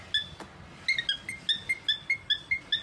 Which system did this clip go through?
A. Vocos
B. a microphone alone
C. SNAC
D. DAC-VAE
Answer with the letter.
B